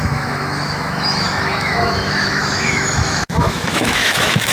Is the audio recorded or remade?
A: remade